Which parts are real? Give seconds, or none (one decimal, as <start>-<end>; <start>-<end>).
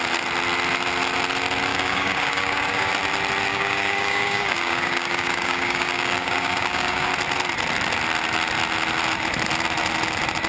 0.0-1.7; 2.9-3.5; 7.1-10.5